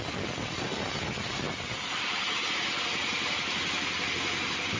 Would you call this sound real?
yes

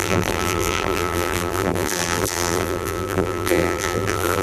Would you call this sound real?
no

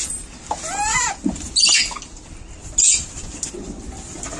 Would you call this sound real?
yes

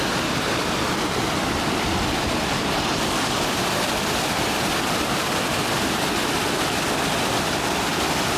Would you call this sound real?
yes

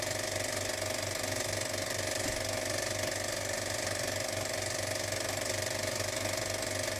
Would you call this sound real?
yes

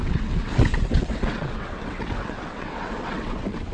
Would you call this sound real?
no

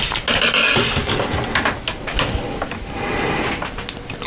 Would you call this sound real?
yes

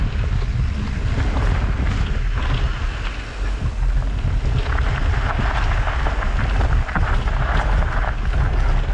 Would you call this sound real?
yes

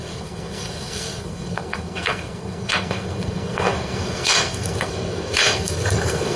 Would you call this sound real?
no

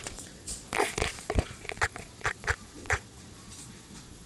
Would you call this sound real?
no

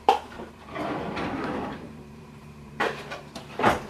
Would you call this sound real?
no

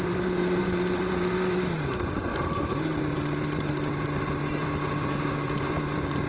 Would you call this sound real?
no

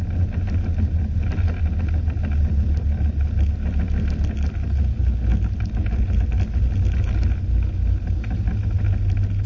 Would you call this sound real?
yes